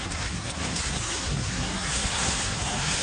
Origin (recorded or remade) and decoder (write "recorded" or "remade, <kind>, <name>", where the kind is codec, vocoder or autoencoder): remade, codec, SNAC